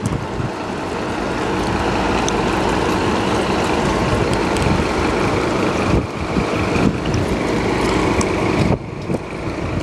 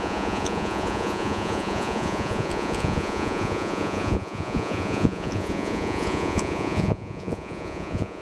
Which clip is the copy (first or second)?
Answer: second